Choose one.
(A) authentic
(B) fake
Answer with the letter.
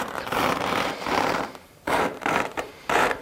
B